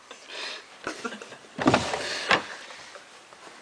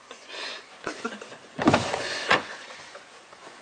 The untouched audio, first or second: first